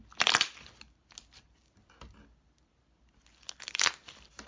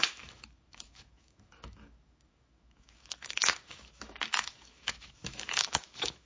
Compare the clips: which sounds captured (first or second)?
first